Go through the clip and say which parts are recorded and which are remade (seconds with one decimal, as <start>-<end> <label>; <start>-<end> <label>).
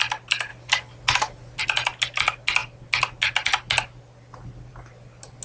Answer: 0.0-5.4 recorded